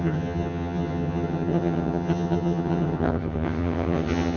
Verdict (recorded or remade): remade